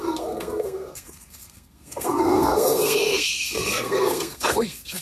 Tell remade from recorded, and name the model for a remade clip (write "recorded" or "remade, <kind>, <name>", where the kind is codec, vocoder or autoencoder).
remade, codec, SNAC